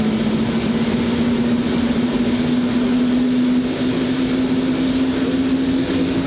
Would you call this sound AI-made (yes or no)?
no